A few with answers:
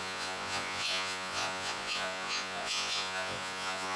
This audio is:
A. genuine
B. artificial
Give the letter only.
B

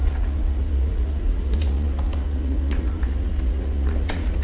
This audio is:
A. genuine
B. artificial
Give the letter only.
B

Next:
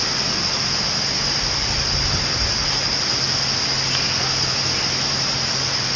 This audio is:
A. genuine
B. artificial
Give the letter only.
A